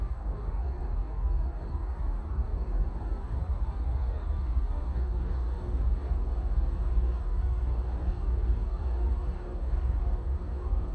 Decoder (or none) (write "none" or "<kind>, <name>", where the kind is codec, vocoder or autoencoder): codec, DAC